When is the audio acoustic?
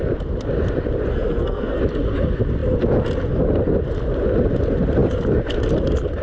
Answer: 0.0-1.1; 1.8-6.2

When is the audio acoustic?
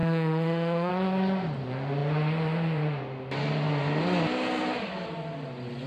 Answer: 0.9-5.9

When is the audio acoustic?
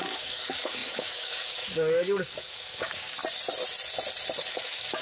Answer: 3.2-4.5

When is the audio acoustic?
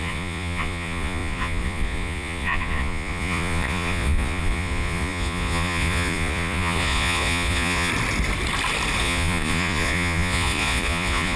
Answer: 7.9-9.0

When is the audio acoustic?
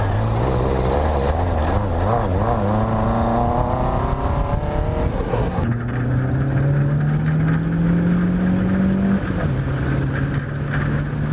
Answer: 0.0-5.1; 5.6-11.3